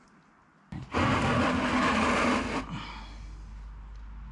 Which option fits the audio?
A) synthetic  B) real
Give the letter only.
B